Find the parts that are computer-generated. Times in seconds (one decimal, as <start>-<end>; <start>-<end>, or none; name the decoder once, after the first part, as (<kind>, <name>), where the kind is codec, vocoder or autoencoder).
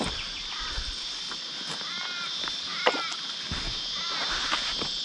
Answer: none